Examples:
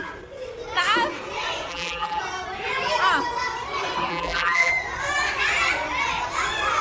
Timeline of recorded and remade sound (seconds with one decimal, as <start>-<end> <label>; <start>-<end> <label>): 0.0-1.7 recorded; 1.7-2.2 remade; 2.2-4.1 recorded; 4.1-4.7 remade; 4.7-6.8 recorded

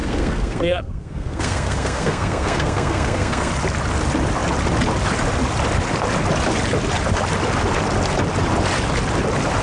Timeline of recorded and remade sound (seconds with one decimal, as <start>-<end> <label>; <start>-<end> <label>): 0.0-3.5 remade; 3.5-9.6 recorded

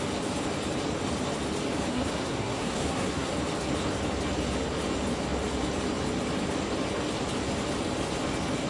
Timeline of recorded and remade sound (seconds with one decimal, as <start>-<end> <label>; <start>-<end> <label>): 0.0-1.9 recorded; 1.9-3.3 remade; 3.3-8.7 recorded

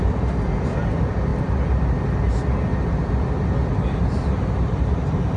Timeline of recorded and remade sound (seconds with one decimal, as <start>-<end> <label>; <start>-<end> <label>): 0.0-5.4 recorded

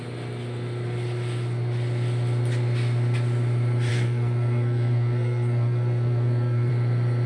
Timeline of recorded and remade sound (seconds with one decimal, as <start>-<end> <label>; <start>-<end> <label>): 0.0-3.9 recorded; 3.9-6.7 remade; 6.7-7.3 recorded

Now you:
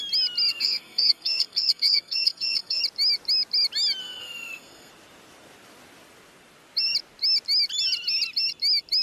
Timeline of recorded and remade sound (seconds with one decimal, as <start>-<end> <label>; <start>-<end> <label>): 0.0-0.5 recorded; 0.5-2.8 remade; 2.8-4.0 recorded; 4.0-4.9 remade; 4.9-9.0 recorded